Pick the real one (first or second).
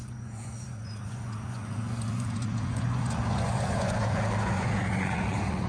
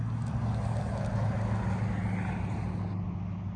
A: second